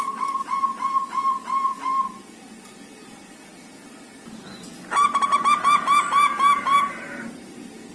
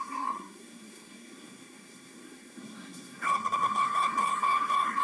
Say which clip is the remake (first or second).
second